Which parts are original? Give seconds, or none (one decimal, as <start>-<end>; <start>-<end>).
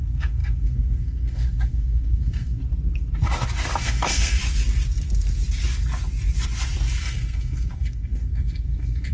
2.6-3.8; 4.4-7.0